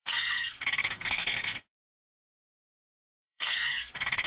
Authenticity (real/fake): fake